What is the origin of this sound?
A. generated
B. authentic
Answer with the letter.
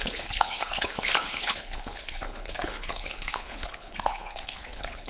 A